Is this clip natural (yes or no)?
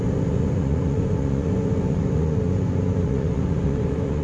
no